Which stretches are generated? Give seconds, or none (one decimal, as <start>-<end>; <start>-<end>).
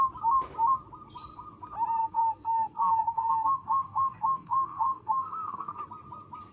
2.0-5.8